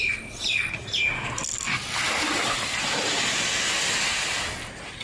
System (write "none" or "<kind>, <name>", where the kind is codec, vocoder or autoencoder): none